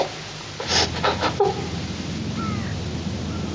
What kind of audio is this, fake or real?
real